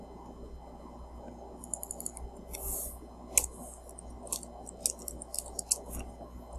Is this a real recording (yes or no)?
yes